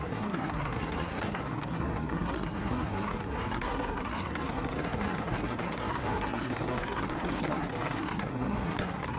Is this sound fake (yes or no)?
yes